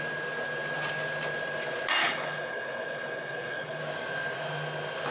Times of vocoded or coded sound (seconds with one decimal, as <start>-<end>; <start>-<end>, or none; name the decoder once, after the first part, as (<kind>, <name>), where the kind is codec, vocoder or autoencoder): 2.0-3.8 (codec, HILCodec)